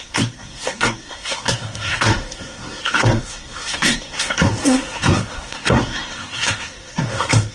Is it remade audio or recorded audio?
remade